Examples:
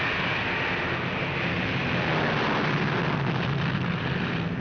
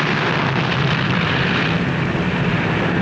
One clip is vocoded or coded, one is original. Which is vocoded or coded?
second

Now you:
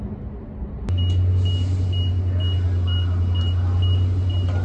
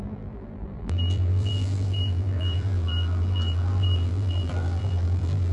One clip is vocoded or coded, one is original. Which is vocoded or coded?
second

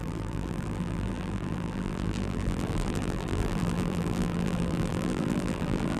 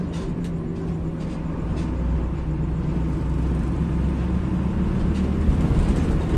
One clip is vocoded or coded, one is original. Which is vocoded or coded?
first